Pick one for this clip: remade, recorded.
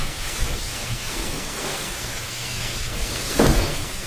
remade